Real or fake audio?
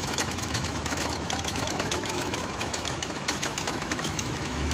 fake